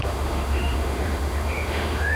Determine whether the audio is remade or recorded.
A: remade